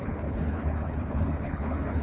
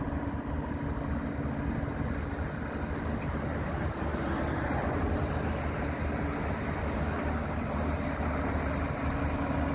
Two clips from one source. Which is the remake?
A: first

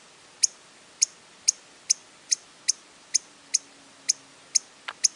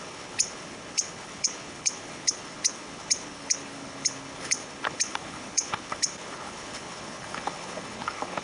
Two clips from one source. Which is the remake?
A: second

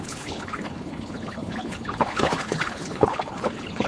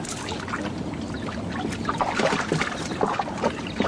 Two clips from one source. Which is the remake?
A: first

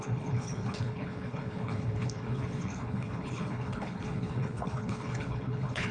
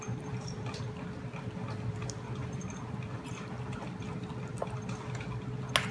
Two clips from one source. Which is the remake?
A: first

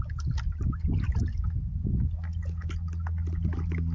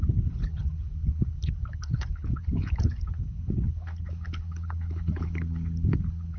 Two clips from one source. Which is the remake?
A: second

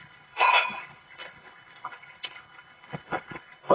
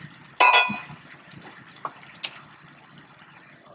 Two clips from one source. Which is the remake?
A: first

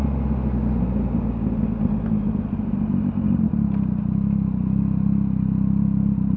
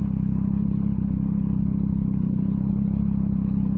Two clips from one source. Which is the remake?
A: second